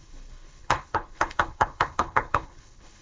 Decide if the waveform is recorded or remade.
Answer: remade